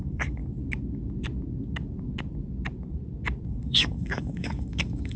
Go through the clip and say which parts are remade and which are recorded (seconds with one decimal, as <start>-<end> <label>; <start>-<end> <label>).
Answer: 0.0-0.4 remade; 0.4-3.5 recorded; 3.5-5.2 remade